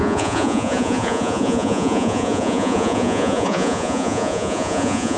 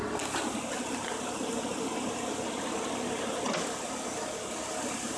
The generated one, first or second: first